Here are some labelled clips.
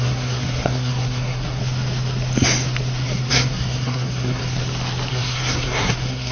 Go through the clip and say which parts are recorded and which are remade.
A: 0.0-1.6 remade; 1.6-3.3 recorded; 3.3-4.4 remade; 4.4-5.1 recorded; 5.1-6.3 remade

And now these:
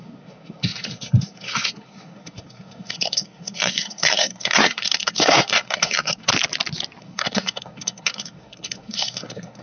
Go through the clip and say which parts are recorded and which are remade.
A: 0.0-6.3 remade; 6.3-7.0 recorded; 7.0-9.6 remade

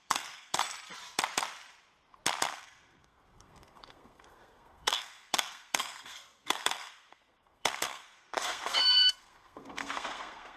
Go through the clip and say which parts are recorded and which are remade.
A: 0.0-0.6 remade; 0.6-2.5 recorded; 2.5-10.6 remade

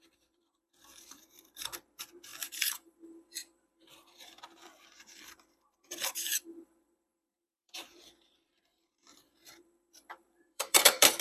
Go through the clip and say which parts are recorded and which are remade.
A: 0.0-11.2 remade